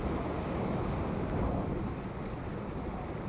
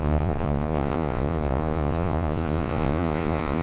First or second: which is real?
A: first